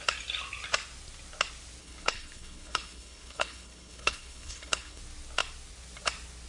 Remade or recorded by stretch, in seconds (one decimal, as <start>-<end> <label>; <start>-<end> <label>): 0.0-1.8 recorded; 1.8-5.0 remade; 5.0-6.5 recorded